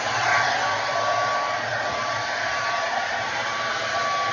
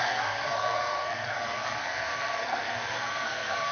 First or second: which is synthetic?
second